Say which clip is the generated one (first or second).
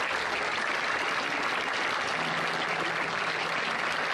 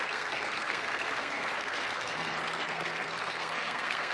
second